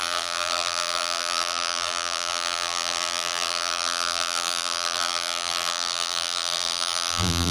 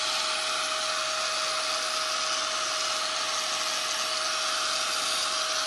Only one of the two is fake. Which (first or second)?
first